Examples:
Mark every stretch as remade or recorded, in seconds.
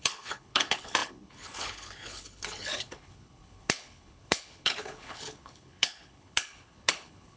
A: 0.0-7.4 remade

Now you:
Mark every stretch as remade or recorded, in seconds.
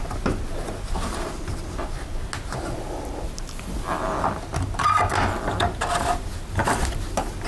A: 0.0-7.5 recorded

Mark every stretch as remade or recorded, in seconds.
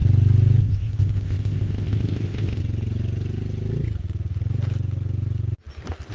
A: 0.0-0.6 recorded; 0.6-2.6 remade; 2.6-6.1 recorded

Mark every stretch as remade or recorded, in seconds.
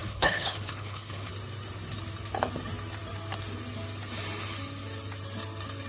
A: 0.0-1.3 remade; 1.3-5.9 recorded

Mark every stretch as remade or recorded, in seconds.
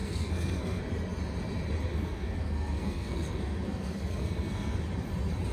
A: 0.0-0.8 remade; 0.8-1.9 recorded; 1.9-4.8 remade; 4.8-5.5 recorded